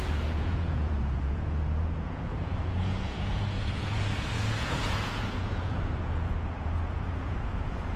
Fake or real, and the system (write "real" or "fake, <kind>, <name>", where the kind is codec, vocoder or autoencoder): fake, vocoder, Vocos